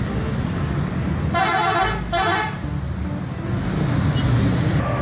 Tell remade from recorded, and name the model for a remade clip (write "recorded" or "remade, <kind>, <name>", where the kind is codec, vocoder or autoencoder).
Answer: recorded